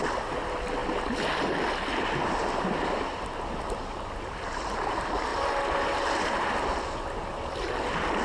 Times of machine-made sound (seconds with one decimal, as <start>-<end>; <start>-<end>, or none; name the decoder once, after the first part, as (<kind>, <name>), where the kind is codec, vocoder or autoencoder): none